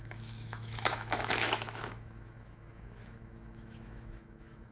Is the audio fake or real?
fake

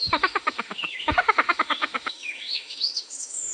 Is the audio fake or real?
fake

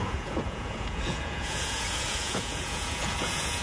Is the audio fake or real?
fake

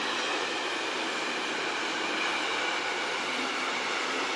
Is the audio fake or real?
real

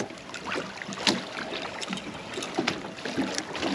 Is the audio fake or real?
real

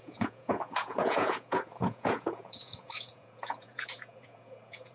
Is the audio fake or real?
fake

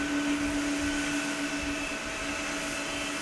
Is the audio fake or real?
real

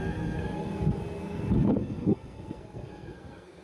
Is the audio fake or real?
fake